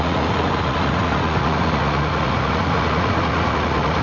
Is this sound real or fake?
fake